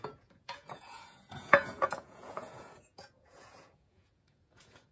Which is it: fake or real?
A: fake